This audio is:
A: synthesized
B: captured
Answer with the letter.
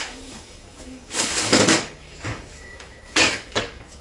A